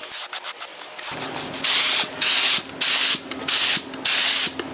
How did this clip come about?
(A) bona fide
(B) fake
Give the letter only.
A